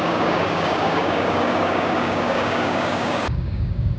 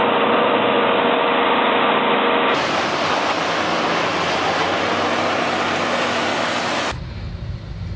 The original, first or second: second